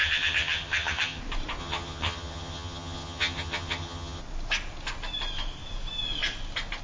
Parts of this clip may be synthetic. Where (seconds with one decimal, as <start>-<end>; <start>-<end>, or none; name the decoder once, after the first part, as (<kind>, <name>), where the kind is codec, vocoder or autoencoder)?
0.0-1.2 (vocoder, HiFi-GAN); 1.6-4.2